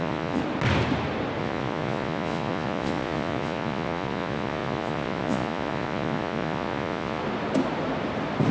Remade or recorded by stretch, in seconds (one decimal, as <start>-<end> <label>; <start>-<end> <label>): 0.0-0.4 remade; 0.4-1.4 recorded; 1.4-7.2 remade; 7.2-8.5 recorded